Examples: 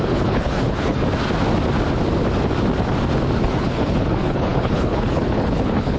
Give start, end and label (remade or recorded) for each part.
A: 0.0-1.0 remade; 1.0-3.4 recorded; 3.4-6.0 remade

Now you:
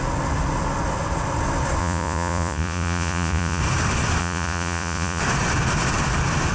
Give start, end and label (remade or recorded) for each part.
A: 0.0-1.8 recorded; 1.8-3.6 remade; 3.6-4.2 recorded; 4.2-5.2 remade; 5.2-6.5 recorded

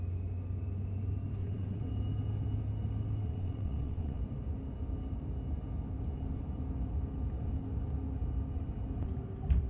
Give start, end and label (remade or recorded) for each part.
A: 0.0-1.4 recorded; 1.4-1.9 remade; 1.9-3.2 recorded; 3.2-4.2 remade; 4.2-9.7 recorded

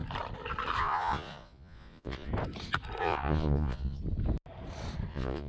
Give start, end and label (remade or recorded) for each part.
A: 0.0-0.8 recorded; 0.8-2.3 remade; 2.3-3.0 recorded; 3.0-4.0 remade; 4.0-5.1 recorded; 5.1-5.5 remade

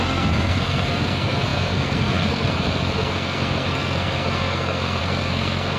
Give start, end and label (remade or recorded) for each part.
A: 0.0-5.8 remade

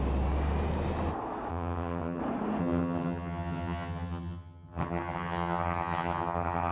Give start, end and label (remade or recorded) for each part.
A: 0.0-1.5 recorded; 1.5-2.2 remade; 2.2-2.6 recorded; 2.6-6.7 remade

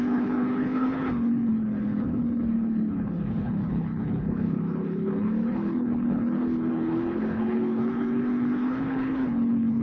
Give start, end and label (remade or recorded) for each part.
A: 0.0-9.8 remade